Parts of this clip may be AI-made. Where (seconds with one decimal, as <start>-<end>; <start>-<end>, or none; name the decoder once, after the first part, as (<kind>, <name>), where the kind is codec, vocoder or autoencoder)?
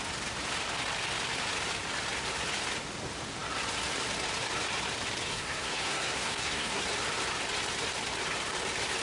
5.3-6.8 (codec, SNAC)